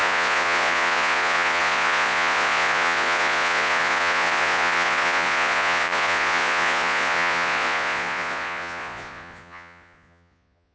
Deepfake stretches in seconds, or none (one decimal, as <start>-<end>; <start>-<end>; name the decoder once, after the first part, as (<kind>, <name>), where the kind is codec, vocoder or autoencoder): 0.0-10.7 (vocoder, Vocos)